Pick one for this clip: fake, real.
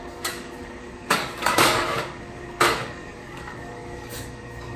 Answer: fake